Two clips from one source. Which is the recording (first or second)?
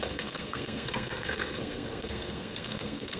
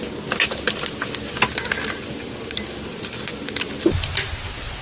second